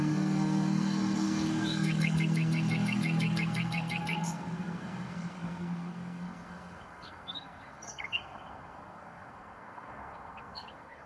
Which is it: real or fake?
fake